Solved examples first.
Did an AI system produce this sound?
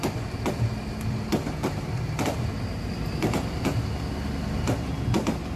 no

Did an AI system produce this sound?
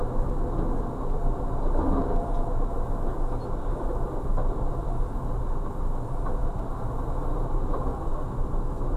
no